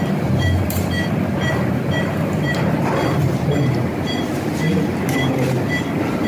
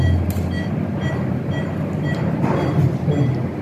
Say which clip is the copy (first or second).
first